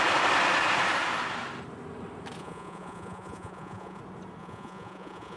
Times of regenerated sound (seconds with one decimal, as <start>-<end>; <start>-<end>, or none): 2.4-4.0; 4.4-5.4